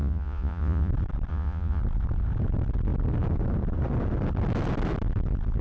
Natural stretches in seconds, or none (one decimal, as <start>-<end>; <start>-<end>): 0.9-1.3; 1.8-5.6